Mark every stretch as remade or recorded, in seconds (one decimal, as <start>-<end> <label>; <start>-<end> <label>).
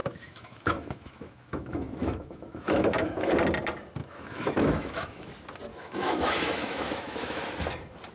0.0-3.3 remade; 3.3-4.0 recorded; 4.0-5.3 remade; 5.3-5.7 recorded; 5.7-7.4 remade; 7.4-8.1 recorded